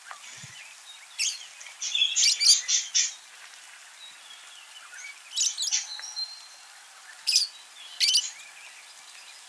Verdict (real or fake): real